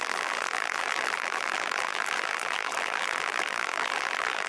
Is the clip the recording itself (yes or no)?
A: no